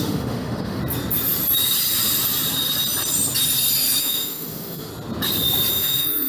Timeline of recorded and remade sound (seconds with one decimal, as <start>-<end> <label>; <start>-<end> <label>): 0.0-0.8 remade; 0.8-4.0 recorded; 4.0-4.9 remade; 4.9-5.7 recorded; 5.7-6.3 remade